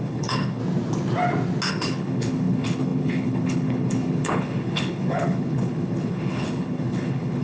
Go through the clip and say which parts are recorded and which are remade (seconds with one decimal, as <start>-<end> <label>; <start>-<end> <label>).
0.0-0.6 remade; 0.6-1.7 recorded; 1.7-7.4 remade